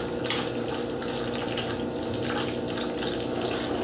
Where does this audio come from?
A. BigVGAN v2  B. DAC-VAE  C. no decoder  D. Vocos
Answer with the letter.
C